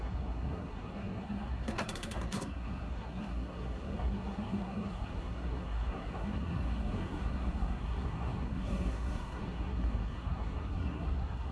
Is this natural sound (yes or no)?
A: no